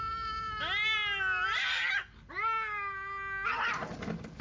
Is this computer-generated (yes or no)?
no